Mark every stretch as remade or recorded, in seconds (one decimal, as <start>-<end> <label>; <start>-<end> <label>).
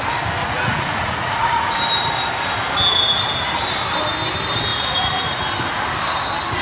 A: 0.0-0.4 recorded; 0.4-1.8 remade; 1.8-4.7 recorded; 4.7-5.4 remade; 5.4-6.6 recorded